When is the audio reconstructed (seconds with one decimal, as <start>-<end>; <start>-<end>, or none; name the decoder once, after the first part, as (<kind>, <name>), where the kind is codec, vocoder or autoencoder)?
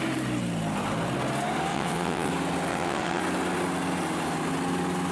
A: 1.7-2.3 (vocoder, WaveNeXt); 2.7-3.2